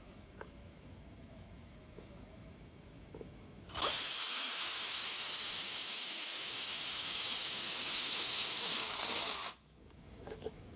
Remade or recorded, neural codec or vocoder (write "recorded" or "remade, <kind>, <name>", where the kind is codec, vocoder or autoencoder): remade, autoencoder, DAC-VAE